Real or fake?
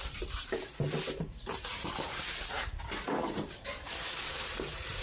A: fake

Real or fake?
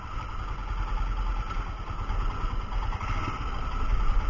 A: real